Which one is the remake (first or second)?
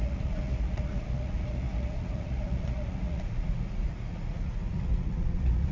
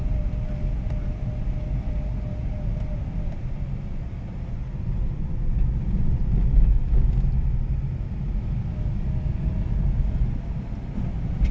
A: first